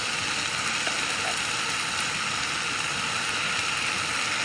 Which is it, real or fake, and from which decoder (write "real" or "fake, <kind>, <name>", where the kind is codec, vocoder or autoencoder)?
real